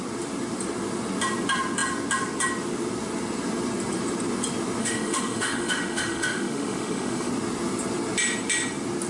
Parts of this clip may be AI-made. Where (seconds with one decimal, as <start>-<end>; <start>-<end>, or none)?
4.8-7.3